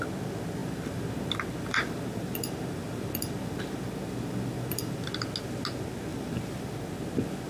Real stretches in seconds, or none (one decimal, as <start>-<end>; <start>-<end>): 0.0-0.6; 5.1-6.1; 7.0-7.5